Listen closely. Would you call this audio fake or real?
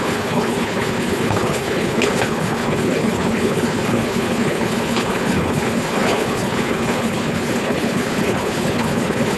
fake